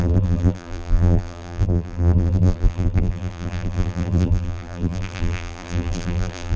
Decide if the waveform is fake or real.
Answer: fake